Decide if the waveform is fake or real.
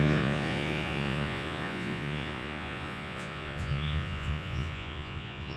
fake